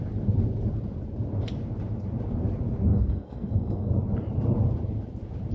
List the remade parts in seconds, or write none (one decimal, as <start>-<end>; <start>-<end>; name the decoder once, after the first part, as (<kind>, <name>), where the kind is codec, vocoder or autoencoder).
2.9-3.9 (codec, SNAC)